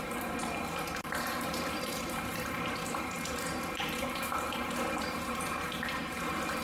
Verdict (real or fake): fake